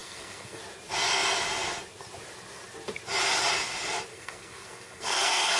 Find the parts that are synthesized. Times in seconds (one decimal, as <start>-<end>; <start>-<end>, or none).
0.0-0.6; 4.1-5.6